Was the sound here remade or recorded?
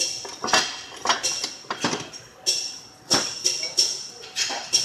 recorded